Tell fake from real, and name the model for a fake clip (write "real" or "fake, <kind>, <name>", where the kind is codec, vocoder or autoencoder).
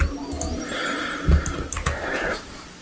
real